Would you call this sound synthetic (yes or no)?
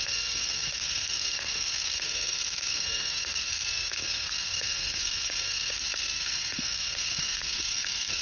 yes